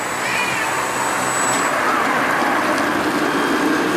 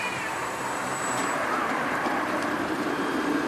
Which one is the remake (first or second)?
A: second